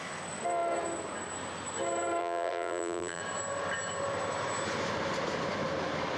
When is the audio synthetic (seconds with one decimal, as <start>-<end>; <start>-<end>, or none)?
2.2-3.2